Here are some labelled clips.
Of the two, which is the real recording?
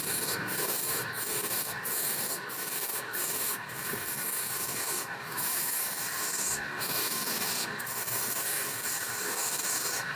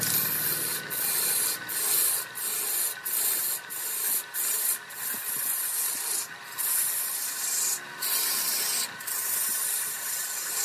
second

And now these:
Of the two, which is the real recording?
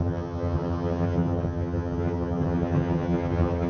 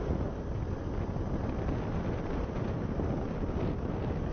second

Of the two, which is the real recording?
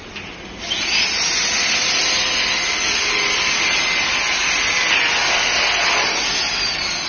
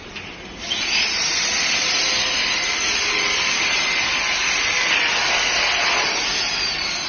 first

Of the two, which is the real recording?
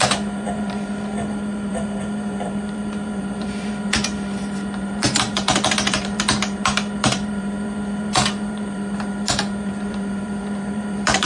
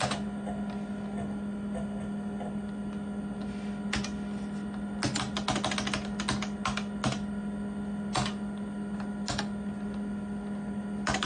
second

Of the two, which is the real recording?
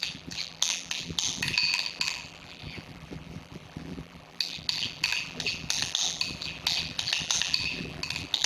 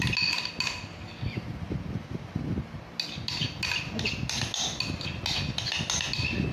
second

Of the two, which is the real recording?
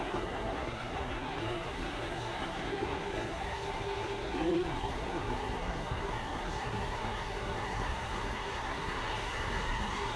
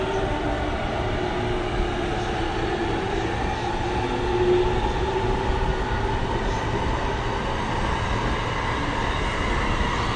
second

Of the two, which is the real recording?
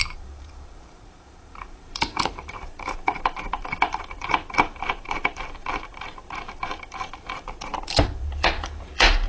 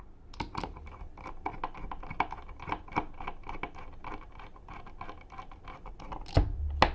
second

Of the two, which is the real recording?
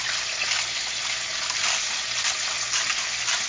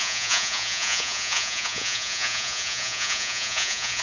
first